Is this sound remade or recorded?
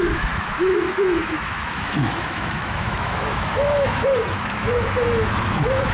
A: remade